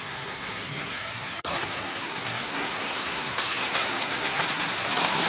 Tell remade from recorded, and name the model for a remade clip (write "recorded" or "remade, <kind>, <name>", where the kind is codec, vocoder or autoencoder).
remade, codec, SNAC